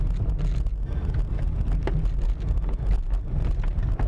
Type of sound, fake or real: real